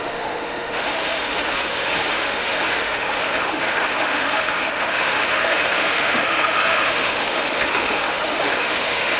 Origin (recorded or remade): remade